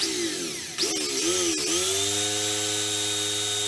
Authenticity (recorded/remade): recorded